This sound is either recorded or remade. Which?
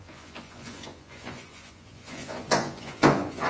remade